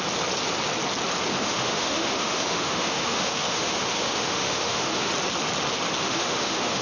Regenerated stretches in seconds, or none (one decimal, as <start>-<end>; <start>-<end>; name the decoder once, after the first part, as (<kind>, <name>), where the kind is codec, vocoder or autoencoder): 1.3-5.1 (autoencoder, DAC-VAE); 6.0-6.8